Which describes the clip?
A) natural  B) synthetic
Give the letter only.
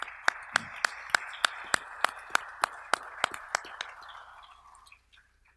A